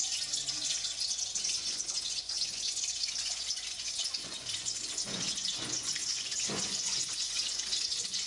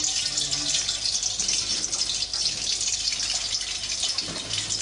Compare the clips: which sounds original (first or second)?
second